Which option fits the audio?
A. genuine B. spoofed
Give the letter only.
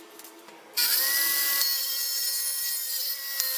A